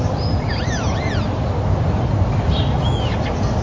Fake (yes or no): no